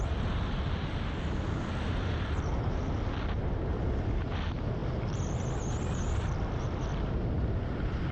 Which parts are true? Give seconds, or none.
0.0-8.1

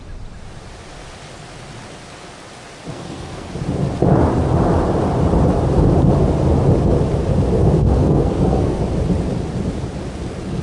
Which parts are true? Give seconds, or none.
0.0-2.9; 3.5-7.6; 8.8-10.6

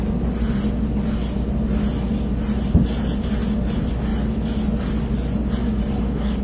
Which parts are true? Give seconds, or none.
0.0-5.6

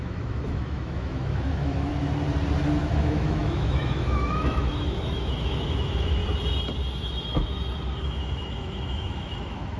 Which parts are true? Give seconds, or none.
1.9-2.8; 6.2-8.0

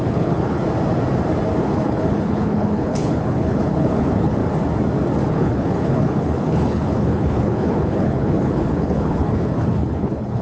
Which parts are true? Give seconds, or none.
0.6-1.6; 4.4-5.3

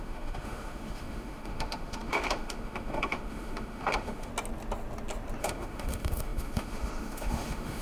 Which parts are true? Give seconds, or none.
4.3-5.4